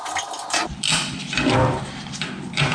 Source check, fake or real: real